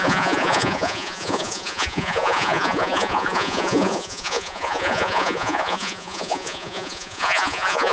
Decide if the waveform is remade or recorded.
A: remade